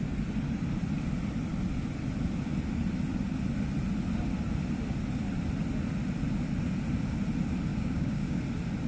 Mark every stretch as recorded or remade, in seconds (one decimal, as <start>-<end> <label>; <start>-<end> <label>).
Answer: 0.0-7.7 recorded; 7.7-8.4 remade; 8.4-8.9 recorded